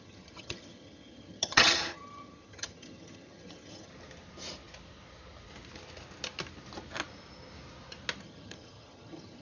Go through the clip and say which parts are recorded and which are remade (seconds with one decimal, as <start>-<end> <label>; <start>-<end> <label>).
0.0-3.9 remade; 3.9-8.2 recorded; 8.2-9.4 remade